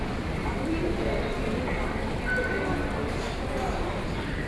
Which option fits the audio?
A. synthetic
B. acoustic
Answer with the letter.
B